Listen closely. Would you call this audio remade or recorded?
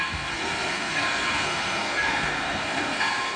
remade